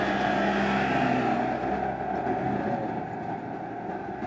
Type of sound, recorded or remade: recorded